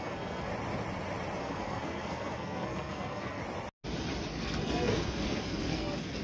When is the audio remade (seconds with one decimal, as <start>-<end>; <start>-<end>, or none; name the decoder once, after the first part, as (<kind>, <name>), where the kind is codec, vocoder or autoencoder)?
0.0-0.5 (codec, SNAC); 1.4-3.4; 4.3-6.2